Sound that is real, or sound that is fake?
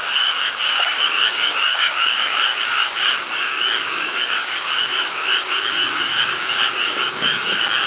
fake